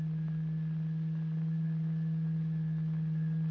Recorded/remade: recorded